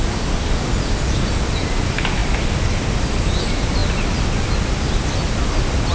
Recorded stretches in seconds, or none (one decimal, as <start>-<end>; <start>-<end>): 0.7-5.9